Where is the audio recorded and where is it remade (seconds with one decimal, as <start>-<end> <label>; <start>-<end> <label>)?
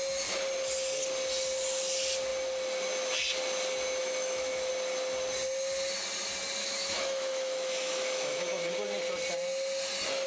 0.0-4.0 recorded; 4.0-4.7 remade; 4.7-6.6 recorded; 6.6-8.7 remade; 8.7-10.3 recorded